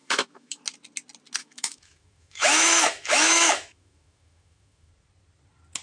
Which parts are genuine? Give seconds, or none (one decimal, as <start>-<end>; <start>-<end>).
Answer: 0.6-1.4; 4.9-5.8